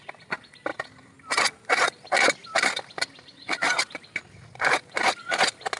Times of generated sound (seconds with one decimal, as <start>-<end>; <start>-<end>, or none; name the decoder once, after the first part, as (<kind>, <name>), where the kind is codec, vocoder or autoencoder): none